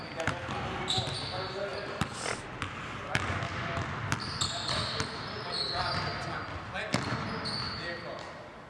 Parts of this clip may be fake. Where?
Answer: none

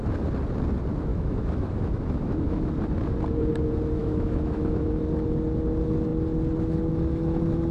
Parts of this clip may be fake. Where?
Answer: 1.1-2.7 (autoencoder, DAC-VAE); 4.0-5.0

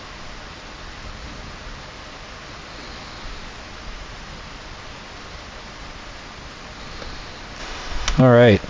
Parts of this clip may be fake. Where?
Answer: 7.6-8.2 (autoencoder, DAC-VAE)

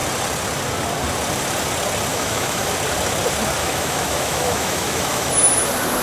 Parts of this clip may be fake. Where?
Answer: 2.1-2.7 (autoencoder, DAC-VAE); 3.6-5.3